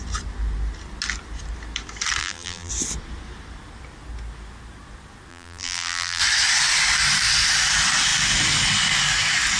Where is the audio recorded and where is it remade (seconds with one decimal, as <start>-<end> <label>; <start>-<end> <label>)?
0.0-2.2 recorded; 2.2-2.7 remade; 2.7-5.3 recorded; 5.3-6.2 remade; 6.2-9.6 recorded